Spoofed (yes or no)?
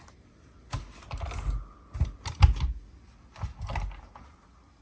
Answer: no